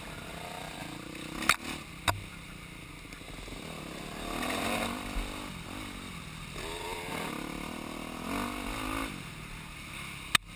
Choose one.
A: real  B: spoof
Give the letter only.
A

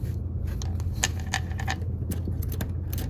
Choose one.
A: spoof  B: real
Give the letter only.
B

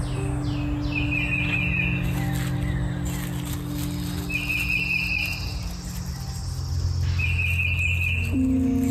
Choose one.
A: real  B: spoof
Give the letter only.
A